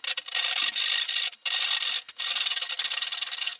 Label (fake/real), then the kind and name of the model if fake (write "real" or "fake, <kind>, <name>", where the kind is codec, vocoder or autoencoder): real